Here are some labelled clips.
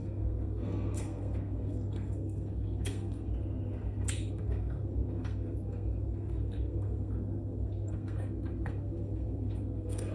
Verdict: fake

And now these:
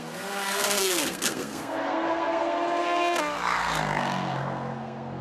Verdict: fake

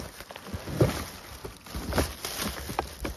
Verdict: real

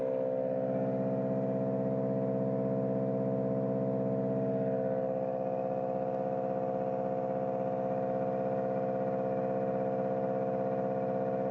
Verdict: real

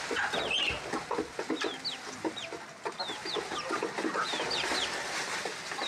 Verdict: real